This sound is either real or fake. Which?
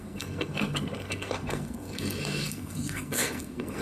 fake